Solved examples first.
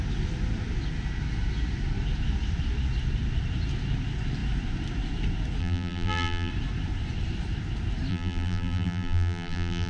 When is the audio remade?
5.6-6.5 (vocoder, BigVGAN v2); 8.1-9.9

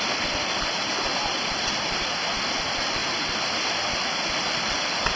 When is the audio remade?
none

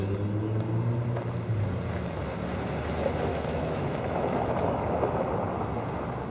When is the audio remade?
3.3-5.3 (autoencoder, DAC-VAE)